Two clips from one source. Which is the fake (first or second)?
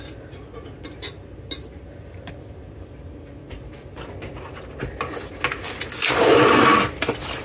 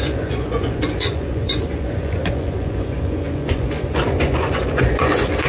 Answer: second